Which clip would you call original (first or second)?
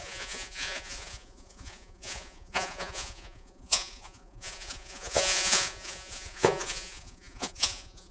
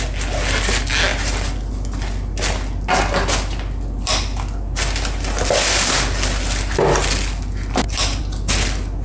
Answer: second